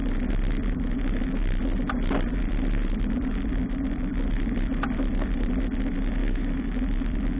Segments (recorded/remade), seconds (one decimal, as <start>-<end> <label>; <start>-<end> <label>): 0.0-6.2 recorded; 6.2-6.7 remade; 6.7-7.4 recorded